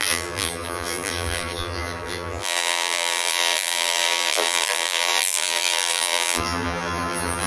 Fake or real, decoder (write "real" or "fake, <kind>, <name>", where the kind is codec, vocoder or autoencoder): fake, vocoder, BigVGAN v2